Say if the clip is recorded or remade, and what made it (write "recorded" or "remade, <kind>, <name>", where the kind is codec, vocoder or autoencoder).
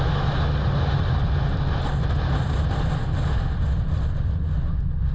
recorded